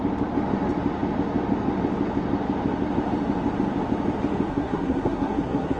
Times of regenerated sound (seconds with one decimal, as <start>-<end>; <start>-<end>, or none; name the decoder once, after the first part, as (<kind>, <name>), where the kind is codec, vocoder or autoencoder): 4.5-5.8 (codec, SNAC)